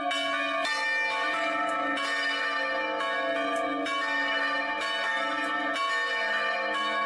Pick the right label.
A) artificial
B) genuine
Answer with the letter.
B